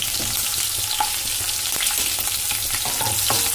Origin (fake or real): real